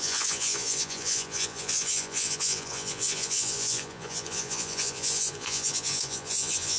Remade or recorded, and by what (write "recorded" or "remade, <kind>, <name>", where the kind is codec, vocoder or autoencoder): remade, vocoder, Vocos